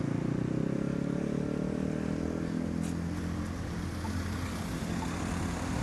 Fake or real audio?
real